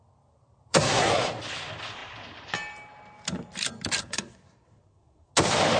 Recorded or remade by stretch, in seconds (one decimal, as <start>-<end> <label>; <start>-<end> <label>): 0.0-0.7 recorded; 0.7-1.3 remade; 1.3-4.0 recorded; 4.0-5.3 remade; 5.3-5.8 recorded